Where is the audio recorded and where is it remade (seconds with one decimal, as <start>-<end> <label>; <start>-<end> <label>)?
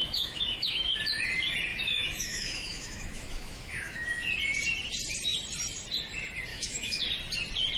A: 0.0-1.0 remade; 1.0-1.7 recorded; 1.7-4.3 remade; 4.3-6.5 recorded; 6.5-7.0 remade; 7.0-7.8 recorded